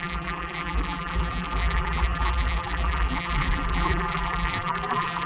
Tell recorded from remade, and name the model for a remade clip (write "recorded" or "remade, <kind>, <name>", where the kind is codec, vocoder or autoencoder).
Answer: remade, vocoder, BigVGAN v2